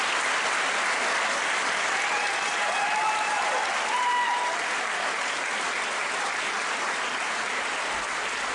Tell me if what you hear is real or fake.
real